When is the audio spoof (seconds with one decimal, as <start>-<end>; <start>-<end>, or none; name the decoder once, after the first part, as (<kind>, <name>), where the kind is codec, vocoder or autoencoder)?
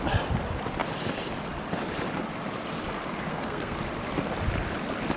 3.3-3.8 (codec, SNAC)